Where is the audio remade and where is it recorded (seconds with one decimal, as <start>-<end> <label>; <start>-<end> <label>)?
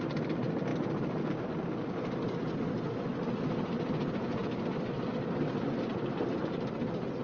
0.0-7.2 recorded